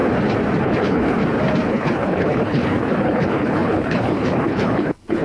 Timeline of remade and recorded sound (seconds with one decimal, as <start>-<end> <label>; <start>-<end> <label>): 0.0-0.6 recorded; 0.6-1.2 remade; 1.2-1.7 recorded; 1.7-5.2 remade